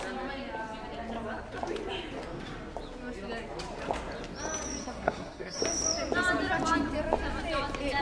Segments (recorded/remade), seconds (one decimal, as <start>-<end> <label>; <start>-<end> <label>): 0.0-4.8 recorded; 4.8-5.6 remade; 5.6-8.0 recorded